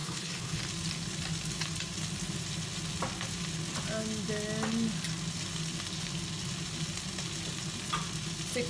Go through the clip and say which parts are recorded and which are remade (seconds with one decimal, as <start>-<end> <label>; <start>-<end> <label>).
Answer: 0.0-0.6 remade; 0.6-8.7 recorded